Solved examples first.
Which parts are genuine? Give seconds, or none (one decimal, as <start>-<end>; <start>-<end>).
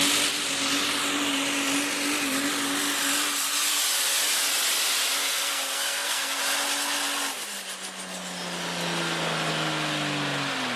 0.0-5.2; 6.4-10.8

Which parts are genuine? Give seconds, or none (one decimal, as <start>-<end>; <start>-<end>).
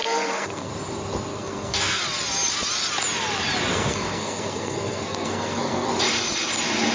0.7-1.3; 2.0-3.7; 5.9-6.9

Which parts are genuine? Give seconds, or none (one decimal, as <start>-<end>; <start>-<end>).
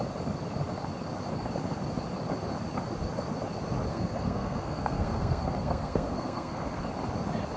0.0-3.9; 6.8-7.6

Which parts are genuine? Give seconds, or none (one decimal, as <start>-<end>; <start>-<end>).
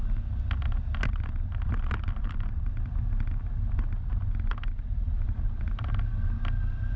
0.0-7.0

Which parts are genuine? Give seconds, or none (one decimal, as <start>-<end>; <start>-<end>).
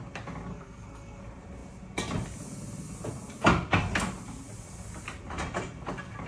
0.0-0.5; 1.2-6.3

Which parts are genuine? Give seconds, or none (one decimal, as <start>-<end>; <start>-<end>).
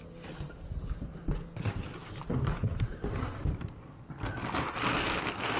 0.0-5.6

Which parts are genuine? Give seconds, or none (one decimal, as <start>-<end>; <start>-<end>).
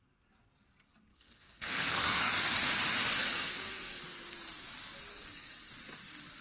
0.0-1.1; 2.3-3.2; 4.0-5.1; 5.7-6.4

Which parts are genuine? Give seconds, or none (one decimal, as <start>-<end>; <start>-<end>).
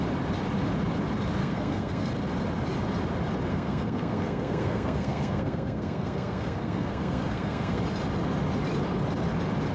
0.0-1.4; 2.1-3.5; 7.8-9.7